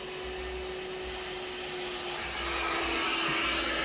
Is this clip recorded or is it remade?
recorded